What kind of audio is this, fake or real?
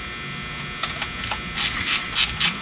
real